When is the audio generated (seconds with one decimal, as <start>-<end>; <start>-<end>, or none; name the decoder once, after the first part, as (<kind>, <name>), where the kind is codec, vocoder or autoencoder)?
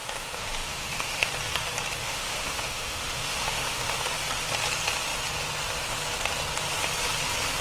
0.0-1.3 (autoencoder, DAC-VAE); 2.0-4.1